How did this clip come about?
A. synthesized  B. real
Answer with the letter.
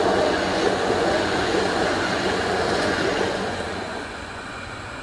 A